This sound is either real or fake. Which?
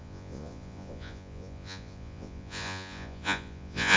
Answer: fake